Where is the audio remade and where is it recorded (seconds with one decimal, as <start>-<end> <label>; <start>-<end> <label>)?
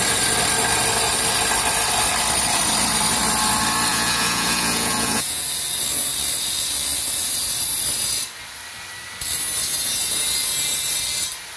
0.0-3.9 recorded; 3.9-5.4 remade; 5.4-11.6 recorded